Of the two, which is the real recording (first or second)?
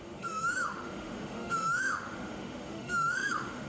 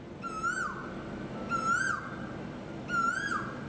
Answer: second